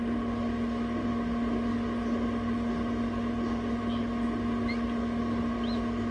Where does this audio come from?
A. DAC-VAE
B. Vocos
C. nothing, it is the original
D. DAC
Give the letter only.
C